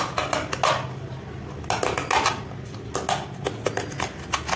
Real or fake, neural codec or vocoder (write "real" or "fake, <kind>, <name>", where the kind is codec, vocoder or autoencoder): real